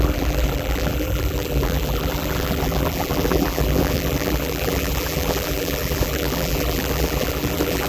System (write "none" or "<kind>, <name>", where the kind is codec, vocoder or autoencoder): vocoder, BigVGAN v2